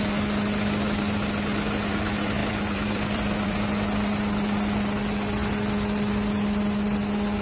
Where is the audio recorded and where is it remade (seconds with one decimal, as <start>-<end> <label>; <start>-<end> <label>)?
0.0-2.4 recorded; 2.4-3.6 remade; 3.6-7.4 recorded